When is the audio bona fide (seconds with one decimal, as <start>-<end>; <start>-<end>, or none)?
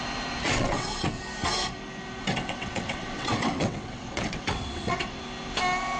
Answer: 0.0-0.5; 1.2-2.2; 5.2-6.0